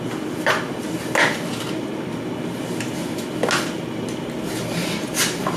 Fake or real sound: real